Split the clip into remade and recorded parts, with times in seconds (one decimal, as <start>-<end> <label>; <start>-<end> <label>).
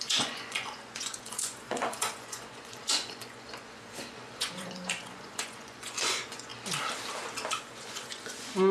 0.0-6.5 remade; 6.5-7.6 recorded; 7.6-8.7 remade